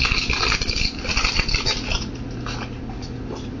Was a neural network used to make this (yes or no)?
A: no